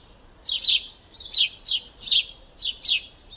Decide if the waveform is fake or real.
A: fake